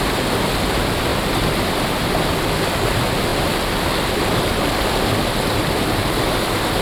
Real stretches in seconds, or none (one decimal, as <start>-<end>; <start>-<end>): 0.0-1.1; 2.5-3.3; 4.4-6.8